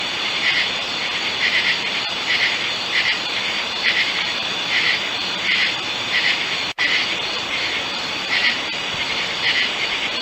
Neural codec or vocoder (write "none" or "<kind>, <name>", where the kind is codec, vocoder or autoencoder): vocoder, BigVGAN v2